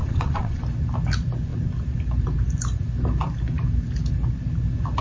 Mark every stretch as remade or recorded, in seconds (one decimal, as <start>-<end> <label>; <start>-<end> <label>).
0.0-0.6 remade; 0.6-5.0 recorded